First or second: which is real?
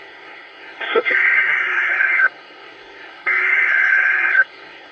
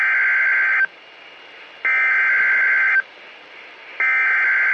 second